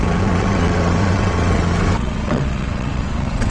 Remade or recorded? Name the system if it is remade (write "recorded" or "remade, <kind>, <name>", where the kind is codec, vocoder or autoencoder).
remade, vocoder, WaveNeXt